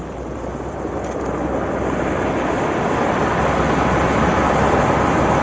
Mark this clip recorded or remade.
recorded